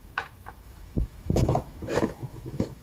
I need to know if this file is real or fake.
fake